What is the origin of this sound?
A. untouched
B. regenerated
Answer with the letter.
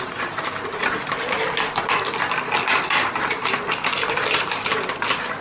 A